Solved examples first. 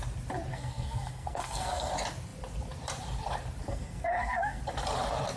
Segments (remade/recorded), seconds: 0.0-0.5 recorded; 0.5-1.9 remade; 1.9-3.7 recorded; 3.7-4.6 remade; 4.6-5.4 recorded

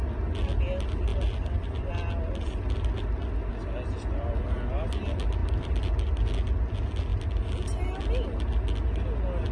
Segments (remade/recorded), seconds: 0.0-1.1 recorded; 1.1-1.9 remade; 1.9-5.4 recorded; 5.4-5.9 remade; 5.9-9.5 recorded

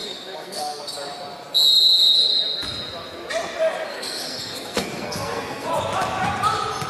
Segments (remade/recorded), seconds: 0.0-0.8 remade; 0.8-3.9 recorded; 3.9-5.7 remade; 5.7-6.9 recorded

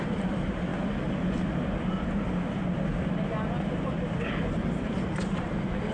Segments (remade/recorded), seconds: 0.0-0.7 remade; 0.7-4.2 recorded; 4.2-5.9 remade